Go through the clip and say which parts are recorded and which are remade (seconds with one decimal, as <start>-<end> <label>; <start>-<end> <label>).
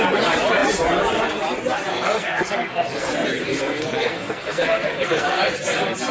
0.0-1.9 recorded; 1.9-3.1 remade; 3.1-3.5 recorded; 3.5-5.4 remade; 5.4-6.1 recorded